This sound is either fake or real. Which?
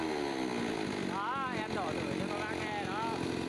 real